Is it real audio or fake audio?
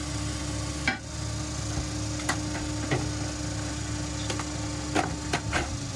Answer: real